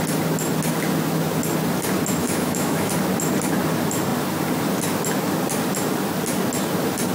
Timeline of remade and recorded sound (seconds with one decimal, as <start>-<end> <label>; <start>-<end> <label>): 0.0-2.2 recorded; 2.2-2.9 remade; 2.9-7.1 recorded